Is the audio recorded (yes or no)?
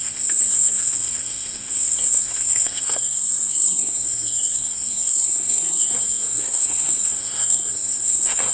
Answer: no